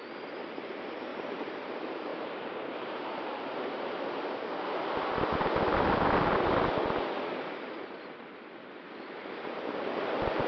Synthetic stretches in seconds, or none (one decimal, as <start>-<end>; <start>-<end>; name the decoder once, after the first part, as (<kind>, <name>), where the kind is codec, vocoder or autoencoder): 1.1-1.7 (vocoder, BigVGAN v2); 2.1-3.9